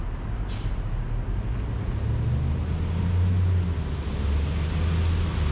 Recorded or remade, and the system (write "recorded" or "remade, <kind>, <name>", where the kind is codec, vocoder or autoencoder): recorded